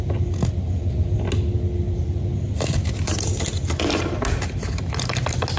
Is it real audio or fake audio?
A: real